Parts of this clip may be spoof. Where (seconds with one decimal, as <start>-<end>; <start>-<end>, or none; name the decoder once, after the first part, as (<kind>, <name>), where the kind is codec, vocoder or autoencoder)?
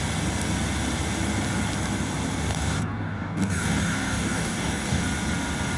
2.5-5.0 (codec, DAC)